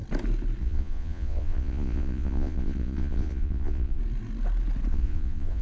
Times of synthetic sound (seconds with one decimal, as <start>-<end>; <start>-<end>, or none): 0.6-4.0; 4.9-5.6